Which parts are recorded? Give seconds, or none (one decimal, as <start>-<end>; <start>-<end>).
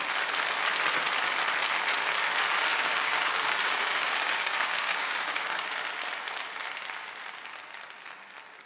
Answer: 0.0-2.7; 5.8-8.7